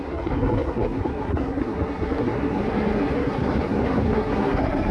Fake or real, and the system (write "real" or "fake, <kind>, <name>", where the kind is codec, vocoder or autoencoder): fake, codec, SNAC